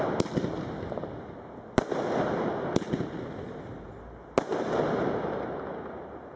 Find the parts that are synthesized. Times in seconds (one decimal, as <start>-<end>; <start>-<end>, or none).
none